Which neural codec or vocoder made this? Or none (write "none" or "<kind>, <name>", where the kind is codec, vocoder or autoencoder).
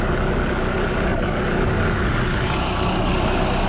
codec, DAC